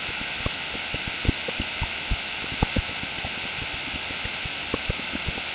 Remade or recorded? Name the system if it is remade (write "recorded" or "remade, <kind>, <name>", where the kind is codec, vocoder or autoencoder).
recorded